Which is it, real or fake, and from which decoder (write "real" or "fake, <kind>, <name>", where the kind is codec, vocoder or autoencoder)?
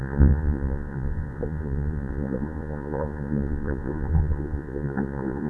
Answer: fake, vocoder, Vocos